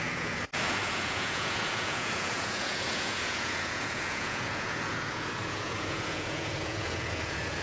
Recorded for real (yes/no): no